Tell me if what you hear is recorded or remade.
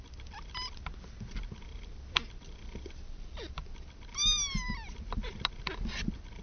recorded